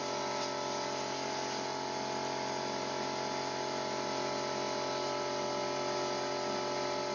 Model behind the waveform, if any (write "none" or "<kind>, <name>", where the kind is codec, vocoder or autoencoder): none